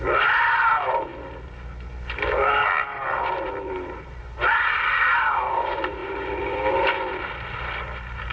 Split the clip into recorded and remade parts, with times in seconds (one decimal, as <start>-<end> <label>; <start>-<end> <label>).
0.0-6.0 recorded; 6.0-6.9 remade; 6.9-8.3 recorded